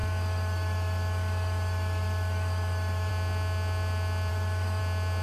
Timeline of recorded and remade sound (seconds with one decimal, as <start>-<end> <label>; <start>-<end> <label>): 0.0-3.1 remade; 3.1-4.3 recorded; 4.3-4.8 remade; 4.8-5.2 recorded